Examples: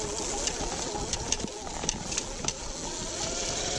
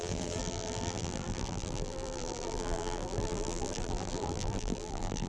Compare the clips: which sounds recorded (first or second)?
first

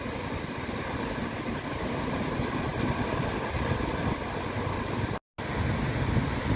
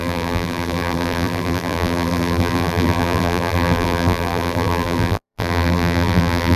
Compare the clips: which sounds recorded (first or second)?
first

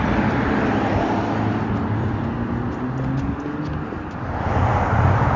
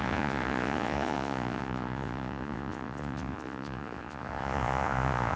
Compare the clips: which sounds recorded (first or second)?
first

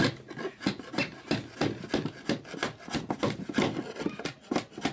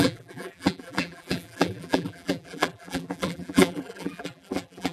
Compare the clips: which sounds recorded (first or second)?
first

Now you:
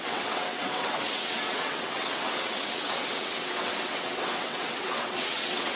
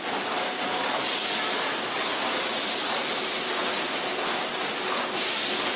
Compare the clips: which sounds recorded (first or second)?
second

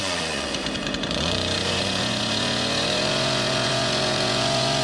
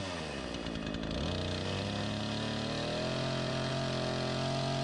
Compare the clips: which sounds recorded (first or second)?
second